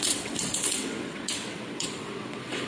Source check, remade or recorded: remade